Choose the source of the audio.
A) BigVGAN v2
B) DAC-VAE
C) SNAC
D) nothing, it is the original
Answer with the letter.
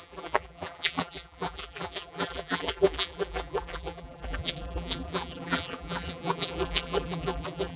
A